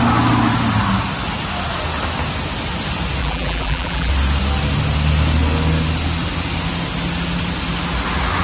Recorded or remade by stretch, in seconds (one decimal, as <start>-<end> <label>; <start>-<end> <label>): 0.0-3.2 recorded; 3.2-4.1 remade; 4.1-8.4 recorded